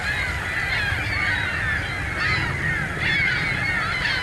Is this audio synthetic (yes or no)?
no